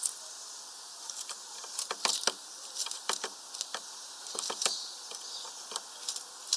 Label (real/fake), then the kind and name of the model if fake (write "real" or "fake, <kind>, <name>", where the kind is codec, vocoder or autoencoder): real